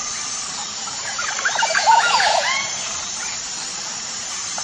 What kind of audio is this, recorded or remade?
remade